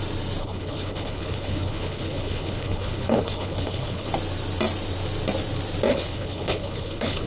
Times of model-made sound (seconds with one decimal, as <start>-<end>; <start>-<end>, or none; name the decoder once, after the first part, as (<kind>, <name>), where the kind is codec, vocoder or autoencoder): 0.4-4.1 (codec, HILCodec); 5.9-7.3